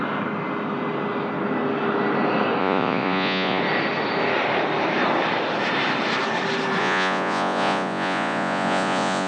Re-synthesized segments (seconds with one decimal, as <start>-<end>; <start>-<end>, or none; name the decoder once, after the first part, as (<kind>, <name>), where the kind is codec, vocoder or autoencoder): 2.6-3.6 (vocoder, Vocos); 6.8-9.3